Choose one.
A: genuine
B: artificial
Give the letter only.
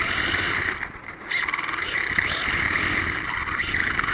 A